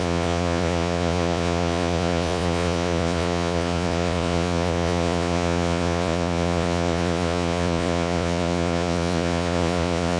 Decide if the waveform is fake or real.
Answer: fake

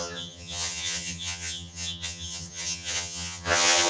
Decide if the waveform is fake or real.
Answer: fake